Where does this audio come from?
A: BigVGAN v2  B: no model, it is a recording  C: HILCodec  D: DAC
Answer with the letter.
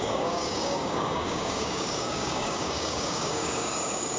D